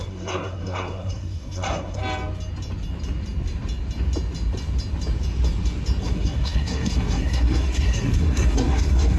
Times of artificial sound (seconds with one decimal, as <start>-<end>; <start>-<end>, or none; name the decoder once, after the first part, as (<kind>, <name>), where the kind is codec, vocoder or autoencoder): 0.0-2.0 (codec, SNAC); 6.0-9.2